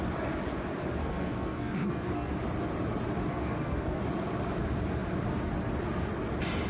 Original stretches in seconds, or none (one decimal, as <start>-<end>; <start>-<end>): 0.0-1.0; 2.3-3.3; 4.0-6.7